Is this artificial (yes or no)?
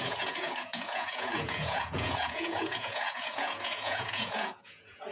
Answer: yes